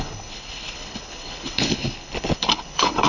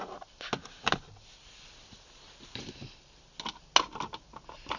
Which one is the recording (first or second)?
second